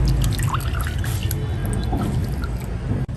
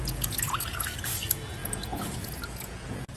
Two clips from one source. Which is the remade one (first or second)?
second